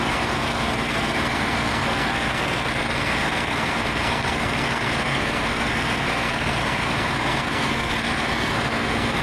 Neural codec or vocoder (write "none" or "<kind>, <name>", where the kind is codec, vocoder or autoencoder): codec, SNAC